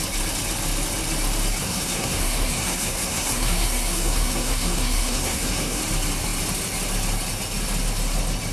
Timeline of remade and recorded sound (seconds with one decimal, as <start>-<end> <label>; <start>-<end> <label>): 0.0-1.6 recorded; 1.6-5.8 remade; 5.8-8.5 recorded